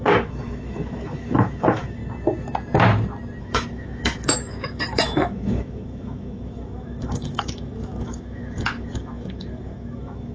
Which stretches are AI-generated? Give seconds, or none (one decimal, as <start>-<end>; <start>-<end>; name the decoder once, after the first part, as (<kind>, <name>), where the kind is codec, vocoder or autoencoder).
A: 0.0-2.0 (autoencoder, DAC-VAE); 3.4-10.3